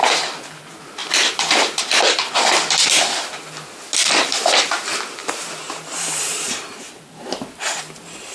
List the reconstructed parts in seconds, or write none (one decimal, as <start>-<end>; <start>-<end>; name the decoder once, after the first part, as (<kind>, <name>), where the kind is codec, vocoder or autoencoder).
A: 1.0-1.8 (vocoder, BigVGAN v2); 5.2-6.9